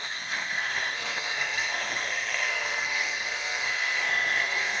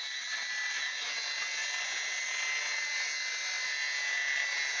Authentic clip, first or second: second